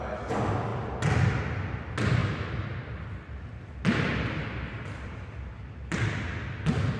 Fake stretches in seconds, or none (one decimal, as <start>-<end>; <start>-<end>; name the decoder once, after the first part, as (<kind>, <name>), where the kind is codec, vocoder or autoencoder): 2.2-3.0 (vocoder, BigVGAN v2); 4.1-5.5